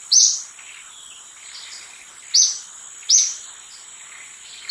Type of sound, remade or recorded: recorded